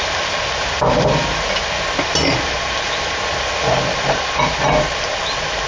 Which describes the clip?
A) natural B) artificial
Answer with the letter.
A